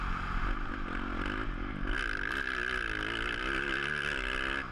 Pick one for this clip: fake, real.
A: real